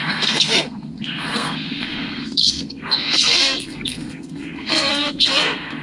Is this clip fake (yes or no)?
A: yes